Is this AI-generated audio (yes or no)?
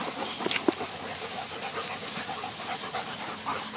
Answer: no